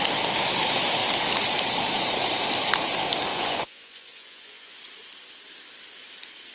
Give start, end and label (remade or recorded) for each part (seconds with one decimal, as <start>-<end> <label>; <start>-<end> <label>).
0.0-3.3 recorded; 3.3-4.8 remade; 4.8-6.5 recorded